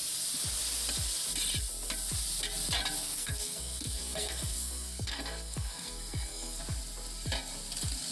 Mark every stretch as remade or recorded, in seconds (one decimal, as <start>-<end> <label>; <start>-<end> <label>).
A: 0.0-3.0 recorded; 3.0-6.6 remade; 6.6-8.1 recorded